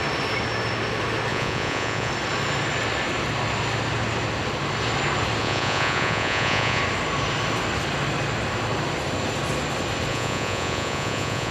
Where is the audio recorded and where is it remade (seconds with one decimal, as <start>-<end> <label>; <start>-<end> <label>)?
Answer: 0.0-1.3 recorded; 1.3-2.1 remade; 2.1-5.4 recorded; 5.4-6.8 remade; 6.8-10.1 recorded; 10.1-11.5 remade